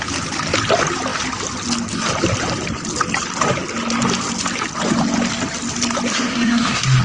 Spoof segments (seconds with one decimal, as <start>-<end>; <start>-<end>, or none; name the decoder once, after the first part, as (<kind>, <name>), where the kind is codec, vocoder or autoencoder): 6.1-7.0 (codec, SNAC)

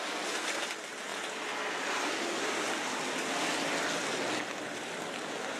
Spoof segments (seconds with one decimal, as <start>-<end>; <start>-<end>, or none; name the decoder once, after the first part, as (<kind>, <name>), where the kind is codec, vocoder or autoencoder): none

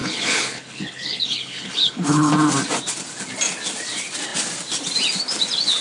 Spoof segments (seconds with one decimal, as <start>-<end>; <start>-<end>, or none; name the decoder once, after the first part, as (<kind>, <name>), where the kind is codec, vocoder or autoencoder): 0.0-2.3 (codec, HILCodec)

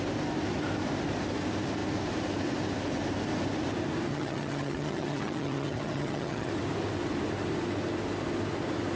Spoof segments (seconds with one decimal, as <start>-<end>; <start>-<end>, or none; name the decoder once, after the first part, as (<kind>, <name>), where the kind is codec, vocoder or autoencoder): 4.1-6.5 (vocoder, HiFi-GAN)

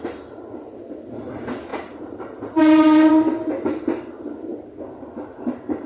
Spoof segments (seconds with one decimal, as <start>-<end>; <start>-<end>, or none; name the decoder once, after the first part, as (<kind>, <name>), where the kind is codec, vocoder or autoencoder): 1.7-3.1 (vocoder, BigVGAN v2); 4.5-5.3

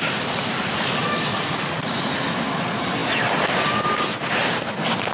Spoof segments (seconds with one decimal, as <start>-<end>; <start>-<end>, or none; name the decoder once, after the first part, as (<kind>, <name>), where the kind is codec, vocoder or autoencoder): 1.3-2.3 (vocoder, Vocos)

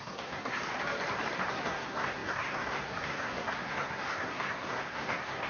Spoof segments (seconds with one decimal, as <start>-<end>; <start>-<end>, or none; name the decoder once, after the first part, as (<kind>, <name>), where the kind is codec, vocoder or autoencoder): 0.0-0.6 (codec, SNAC); 1.5-5.5

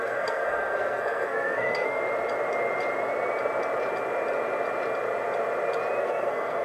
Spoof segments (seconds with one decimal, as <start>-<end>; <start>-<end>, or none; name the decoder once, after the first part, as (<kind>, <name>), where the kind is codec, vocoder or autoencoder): 0.0-2.0 (codec, SNAC); 6.0-6.6